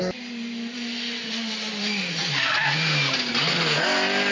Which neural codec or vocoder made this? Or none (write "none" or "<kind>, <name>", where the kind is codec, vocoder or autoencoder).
none